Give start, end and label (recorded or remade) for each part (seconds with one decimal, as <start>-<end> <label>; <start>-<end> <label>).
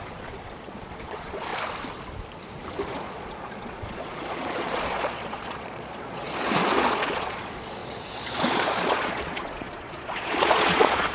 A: 0.0-1.5 remade; 1.5-2.9 recorded; 2.9-11.1 remade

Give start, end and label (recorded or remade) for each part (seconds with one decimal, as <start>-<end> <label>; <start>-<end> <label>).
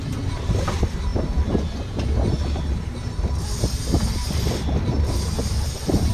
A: 0.0-6.1 recorded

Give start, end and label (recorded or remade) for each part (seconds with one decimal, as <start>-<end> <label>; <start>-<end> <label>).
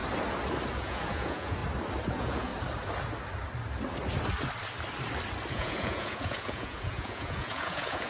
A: 0.0-0.7 recorded; 0.7-1.6 remade; 1.6-2.1 recorded; 2.1-2.5 remade; 2.5-5.5 recorded; 5.5-8.1 remade